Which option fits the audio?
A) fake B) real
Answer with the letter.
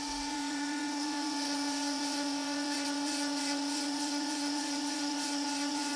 A